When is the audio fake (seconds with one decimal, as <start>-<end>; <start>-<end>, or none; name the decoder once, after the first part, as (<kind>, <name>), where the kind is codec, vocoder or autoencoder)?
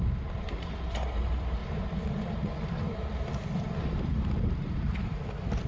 1.6-5.0 (vocoder, BigVGAN v2)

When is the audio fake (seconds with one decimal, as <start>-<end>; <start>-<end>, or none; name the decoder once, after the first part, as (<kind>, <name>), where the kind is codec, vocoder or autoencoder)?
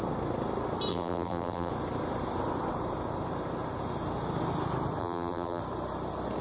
0.9-1.7 (vocoder, BigVGAN v2); 5.0-5.6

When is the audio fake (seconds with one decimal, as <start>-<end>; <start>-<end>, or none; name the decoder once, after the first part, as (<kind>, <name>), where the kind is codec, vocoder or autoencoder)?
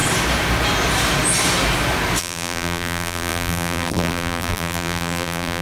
2.2-5.6 (vocoder, BigVGAN v2)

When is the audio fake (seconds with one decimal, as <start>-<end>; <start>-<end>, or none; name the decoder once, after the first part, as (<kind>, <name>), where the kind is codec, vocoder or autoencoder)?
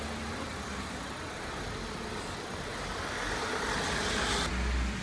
none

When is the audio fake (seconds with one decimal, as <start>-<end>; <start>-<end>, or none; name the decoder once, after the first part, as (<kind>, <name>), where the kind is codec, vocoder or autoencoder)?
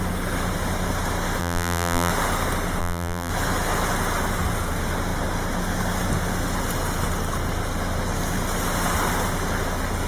1.4-2.1 (vocoder, BigVGAN v2); 2.8-3.3